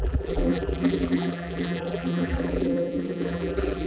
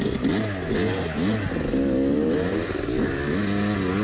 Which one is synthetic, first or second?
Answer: first